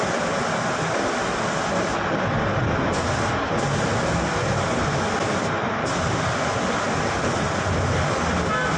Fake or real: real